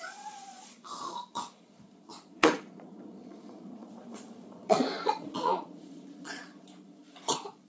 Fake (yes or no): yes